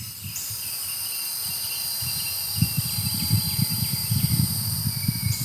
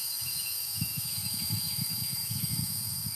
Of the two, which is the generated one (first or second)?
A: second